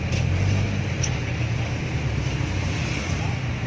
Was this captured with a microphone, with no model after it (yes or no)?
yes